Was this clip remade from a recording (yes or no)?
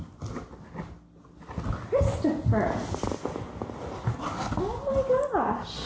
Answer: no